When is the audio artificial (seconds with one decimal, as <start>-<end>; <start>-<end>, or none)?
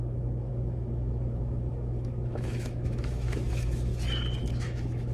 0.0-3.9; 4.4-5.1